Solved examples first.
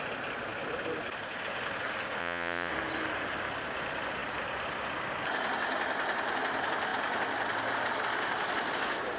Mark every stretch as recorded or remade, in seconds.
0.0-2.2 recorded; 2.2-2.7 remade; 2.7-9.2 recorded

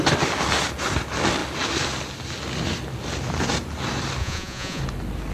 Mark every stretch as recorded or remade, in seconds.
0.0-4.2 recorded; 4.2-4.8 remade; 4.8-5.3 recorded

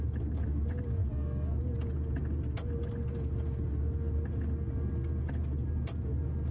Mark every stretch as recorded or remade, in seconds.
0.0-6.5 recorded

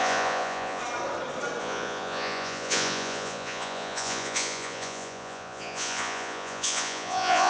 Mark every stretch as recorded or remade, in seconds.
0.0-0.8 remade; 0.8-1.6 recorded; 1.6-7.5 remade